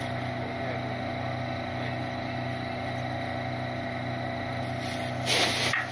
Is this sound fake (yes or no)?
no